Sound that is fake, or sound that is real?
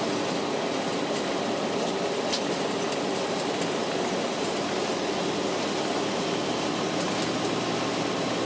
real